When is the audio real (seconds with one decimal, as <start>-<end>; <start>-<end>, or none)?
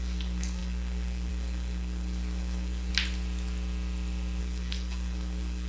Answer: 2.9-4.4